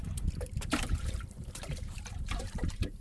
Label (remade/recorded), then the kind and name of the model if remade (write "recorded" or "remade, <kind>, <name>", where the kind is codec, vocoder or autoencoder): remade, vocoder, BigVGAN v2